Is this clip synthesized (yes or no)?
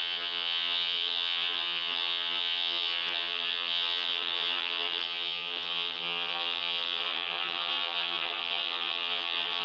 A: yes